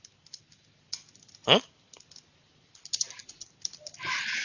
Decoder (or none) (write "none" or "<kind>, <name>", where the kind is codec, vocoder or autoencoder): none